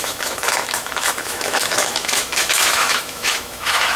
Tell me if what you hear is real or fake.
fake